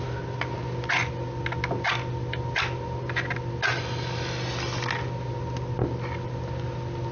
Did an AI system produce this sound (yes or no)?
no